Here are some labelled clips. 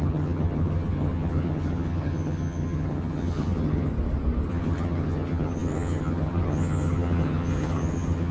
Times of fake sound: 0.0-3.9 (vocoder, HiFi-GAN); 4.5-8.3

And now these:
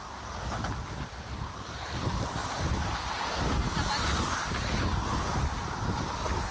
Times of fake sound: none

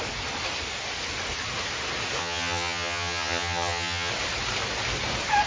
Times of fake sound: 2.2-4.1 (vocoder, HiFi-GAN)

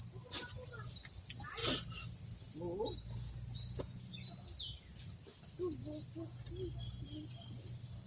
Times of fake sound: none

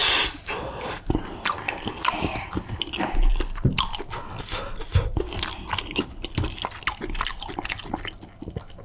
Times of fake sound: none

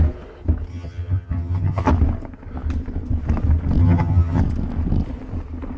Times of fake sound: 0.7-1.9 (vocoder, HiFi-GAN); 3.8-4.4

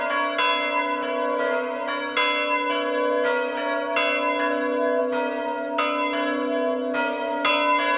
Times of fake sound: none

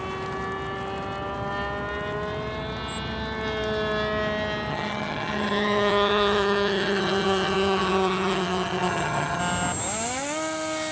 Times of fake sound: 4.7-9.4 (vocoder, HiFi-GAN)